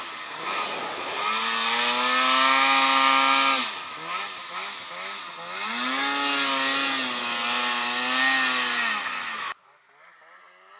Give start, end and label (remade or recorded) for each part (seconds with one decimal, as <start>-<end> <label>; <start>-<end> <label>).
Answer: 0.0-4.4 recorded; 4.4-5.2 remade; 5.2-10.8 recorded